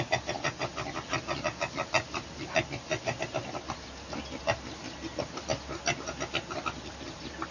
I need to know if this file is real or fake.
real